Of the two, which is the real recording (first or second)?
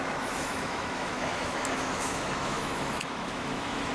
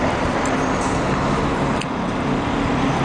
second